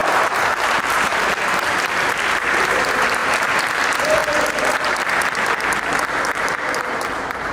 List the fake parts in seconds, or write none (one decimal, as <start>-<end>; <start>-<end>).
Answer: 0.0-1.1; 2.1-4.2; 6.4-7.5